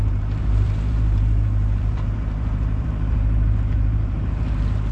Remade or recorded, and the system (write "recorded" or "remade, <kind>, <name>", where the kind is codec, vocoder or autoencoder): remade, vocoder, BigVGAN v2